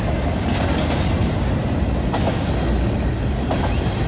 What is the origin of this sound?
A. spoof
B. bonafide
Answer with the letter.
B